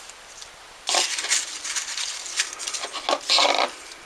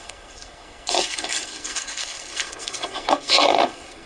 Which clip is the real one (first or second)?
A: first